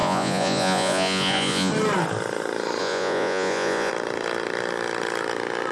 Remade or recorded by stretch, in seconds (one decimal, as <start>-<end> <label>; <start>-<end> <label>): 0.0-1.7 remade; 1.7-2.8 recorded; 2.8-3.9 remade; 3.9-5.7 recorded